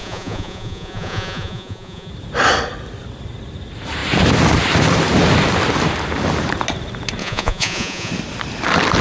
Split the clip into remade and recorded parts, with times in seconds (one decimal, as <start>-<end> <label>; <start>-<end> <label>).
0.0-2.1 remade; 2.1-7.2 recorded; 7.2-8.1 remade; 8.1-9.0 recorded